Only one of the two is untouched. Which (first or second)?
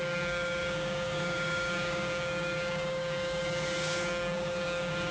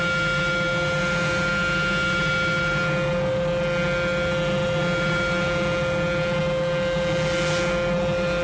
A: second